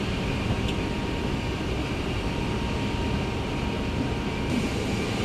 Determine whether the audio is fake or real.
real